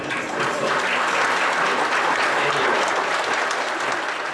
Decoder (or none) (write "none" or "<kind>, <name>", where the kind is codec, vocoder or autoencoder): none